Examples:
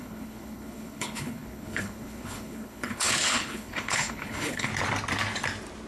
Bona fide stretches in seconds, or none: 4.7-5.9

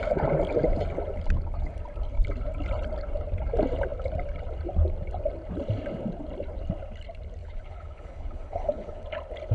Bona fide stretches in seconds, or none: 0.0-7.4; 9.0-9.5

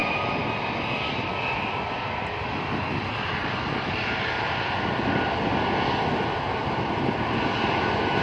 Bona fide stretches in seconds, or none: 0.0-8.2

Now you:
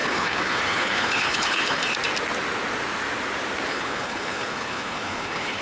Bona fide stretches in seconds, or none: 1.8-3.7

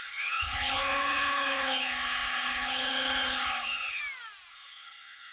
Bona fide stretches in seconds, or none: 4.0-4.5

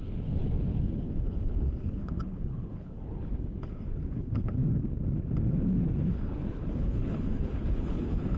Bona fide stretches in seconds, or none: 4.6-6.0

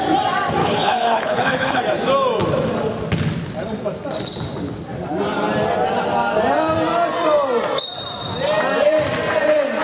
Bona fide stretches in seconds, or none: 0.0-0.6; 1.8-9.8

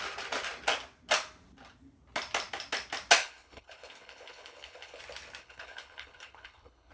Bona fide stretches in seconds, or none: 0.0-3.2; 5.0-5.4